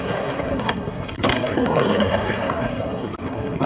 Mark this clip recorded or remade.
remade